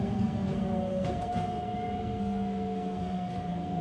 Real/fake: fake